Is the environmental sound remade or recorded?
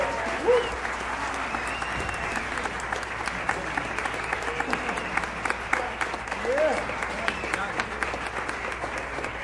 recorded